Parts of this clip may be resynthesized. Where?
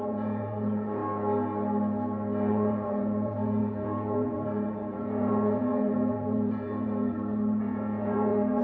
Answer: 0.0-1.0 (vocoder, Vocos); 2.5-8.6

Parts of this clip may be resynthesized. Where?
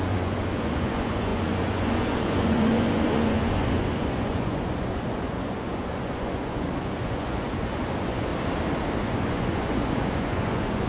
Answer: 0.0-8.3 (vocoder, Vocos); 9.0-10.9